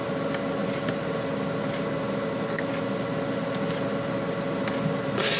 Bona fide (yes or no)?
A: yes